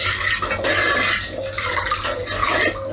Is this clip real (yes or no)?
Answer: yes